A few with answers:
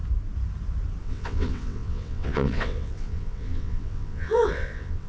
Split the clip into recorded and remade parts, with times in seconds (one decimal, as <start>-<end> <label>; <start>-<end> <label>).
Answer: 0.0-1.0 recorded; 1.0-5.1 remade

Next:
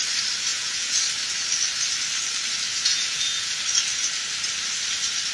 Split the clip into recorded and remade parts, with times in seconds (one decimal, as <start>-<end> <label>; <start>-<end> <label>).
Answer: 0.0-0.5 recorded; 0.5-1.0 remade; 1.0-2.7 recorded; 2.7-3.6 remade; 3.6-5.3 recorded

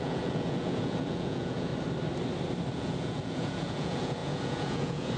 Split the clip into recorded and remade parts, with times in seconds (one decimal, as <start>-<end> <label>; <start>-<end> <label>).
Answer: 0.0-1.7 remade; 1.7-2.7 recorded; 2.7-5.2 remade

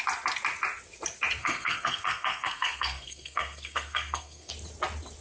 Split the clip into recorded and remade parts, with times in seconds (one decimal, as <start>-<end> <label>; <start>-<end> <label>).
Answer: 0.0-1.4 recorded; 1.4-4.5 remade; 4.5-5.2 recorded

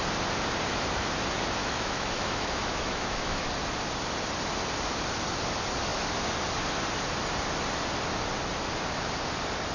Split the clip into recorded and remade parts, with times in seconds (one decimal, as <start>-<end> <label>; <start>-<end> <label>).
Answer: 0.0-1.6 recorded; 1.6-3.5 remade; 3.5-9.7 recorded

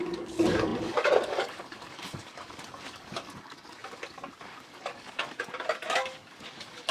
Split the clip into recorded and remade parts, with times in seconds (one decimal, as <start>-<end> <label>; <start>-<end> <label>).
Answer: 0.0-6.9 remade

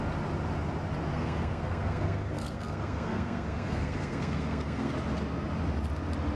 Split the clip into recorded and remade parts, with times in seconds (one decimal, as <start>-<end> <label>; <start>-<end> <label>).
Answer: 0.0-1.1 recorded; 1.1-4.9 remade; 4.9-6.4 recorded

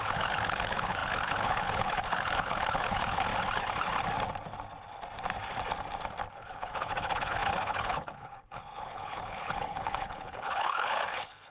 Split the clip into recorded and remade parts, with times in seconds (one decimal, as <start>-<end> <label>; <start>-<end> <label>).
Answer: 0.0-3.3 remade; 3.3-6.3 recorded; 6.3-11.5 remade